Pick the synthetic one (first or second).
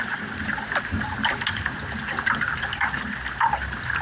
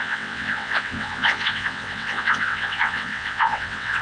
second